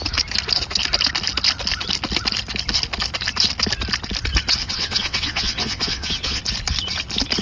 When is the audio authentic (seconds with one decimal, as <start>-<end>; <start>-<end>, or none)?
0.0-4.6; 6.4-7.4